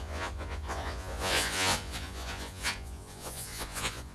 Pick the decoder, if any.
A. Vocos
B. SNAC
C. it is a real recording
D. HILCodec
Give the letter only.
A